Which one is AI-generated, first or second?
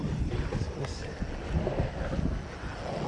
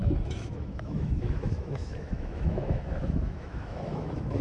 second